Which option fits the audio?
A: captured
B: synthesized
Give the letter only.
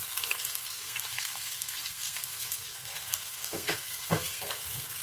B